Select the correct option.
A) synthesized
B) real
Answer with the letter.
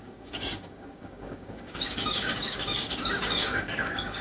A